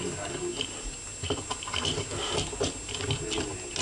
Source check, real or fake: real